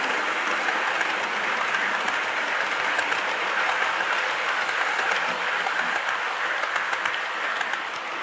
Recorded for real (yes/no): yes